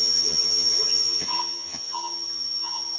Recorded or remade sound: remade